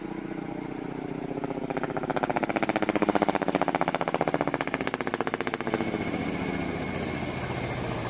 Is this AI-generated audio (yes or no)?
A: no